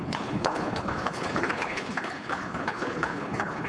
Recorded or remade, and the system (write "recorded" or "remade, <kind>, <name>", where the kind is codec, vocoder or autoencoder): remade, codec, HILCodec